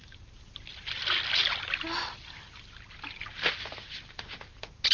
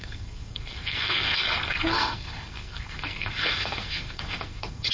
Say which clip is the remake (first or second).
second